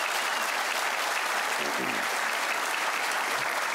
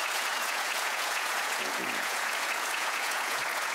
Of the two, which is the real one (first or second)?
first